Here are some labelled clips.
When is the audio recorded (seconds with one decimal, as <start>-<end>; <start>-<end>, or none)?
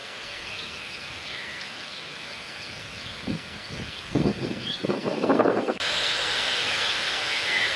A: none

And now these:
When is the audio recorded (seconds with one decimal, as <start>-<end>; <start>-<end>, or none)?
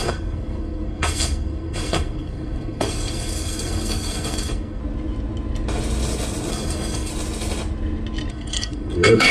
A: 4.8-6.5; 7.1-8.3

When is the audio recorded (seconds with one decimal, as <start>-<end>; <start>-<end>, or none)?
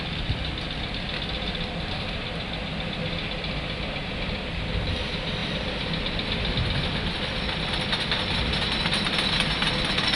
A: 0.0-10.2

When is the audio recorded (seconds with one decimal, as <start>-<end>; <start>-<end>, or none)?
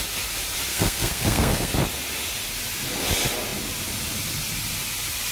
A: 0.0-0.7; 1.7-5.3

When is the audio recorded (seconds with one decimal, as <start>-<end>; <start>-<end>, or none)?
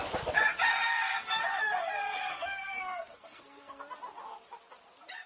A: 0.0-0.7; 1.6-2.2; 3.8-5.3